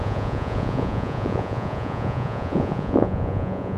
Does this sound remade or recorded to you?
remade